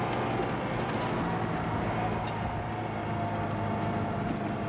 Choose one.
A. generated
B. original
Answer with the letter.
B